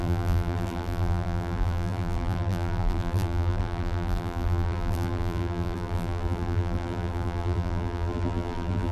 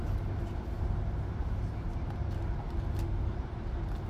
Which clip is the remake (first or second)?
first